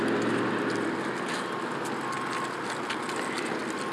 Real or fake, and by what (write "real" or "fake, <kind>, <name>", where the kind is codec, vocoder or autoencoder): real